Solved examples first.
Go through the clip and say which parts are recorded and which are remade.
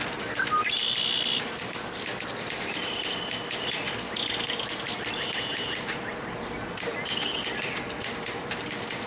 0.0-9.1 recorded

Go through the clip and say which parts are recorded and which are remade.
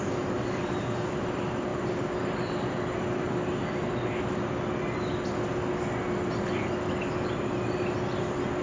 0.0-8.6 recorded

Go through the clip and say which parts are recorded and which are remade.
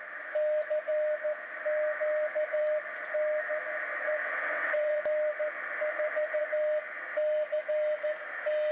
0.0-4.2 recorded; 4.2-5.0 remade; 5.0-8.7 recorded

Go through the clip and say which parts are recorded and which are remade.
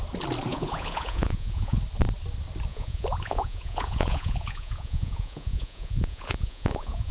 0.0-0.5 recorded; 0.5-1.8 remade; 1.8-2.7 recorded; 2.7-7.1 remade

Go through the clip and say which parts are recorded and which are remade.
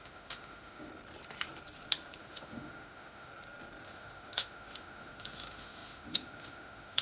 0.0-0.9 remade; 0.9-2.2 recorded; 2.2-3.3 remade; 3.3-3.8 recorded; 3.8-7.0 remade